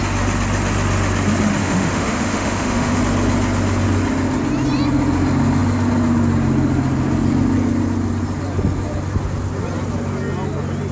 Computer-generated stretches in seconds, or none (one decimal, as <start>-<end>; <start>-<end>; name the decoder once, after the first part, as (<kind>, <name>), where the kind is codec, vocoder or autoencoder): 1.6-3.0 (autoencoder, DAC-VAE)

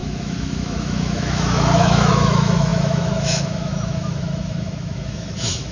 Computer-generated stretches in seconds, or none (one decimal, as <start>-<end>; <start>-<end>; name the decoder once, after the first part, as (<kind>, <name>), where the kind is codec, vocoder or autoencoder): 0.0-5.7 (autoencoder, DAC-VAE)

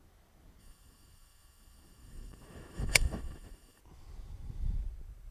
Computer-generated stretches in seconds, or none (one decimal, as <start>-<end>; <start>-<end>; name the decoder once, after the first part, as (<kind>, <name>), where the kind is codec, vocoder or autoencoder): 0.6-3.8 (autoencoder, DAC-VAE)

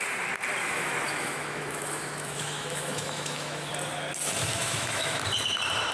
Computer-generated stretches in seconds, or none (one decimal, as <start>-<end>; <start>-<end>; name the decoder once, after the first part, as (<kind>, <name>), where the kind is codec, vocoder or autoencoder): 0.6-3.7 (autoencoder, DAC-VAE); 4.4-5.2

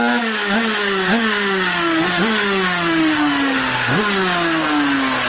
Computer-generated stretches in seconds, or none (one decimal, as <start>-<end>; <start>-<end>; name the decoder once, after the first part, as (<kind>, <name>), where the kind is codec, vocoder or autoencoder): 0.8-4.0 (autoencoder, DAC-VAE)

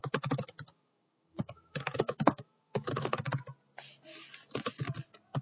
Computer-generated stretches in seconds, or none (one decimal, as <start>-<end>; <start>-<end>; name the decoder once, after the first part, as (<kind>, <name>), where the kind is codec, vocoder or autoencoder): 0.0-3.2 (autoencoder, DAC-VAE)

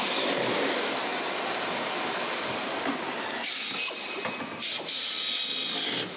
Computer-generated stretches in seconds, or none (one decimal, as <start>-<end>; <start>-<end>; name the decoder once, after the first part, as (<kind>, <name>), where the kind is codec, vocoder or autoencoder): none